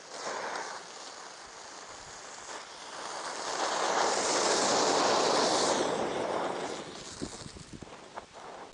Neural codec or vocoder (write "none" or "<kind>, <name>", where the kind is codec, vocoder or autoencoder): none